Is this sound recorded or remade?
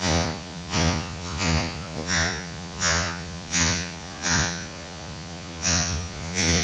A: remade